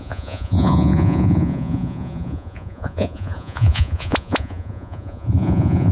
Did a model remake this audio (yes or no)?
yes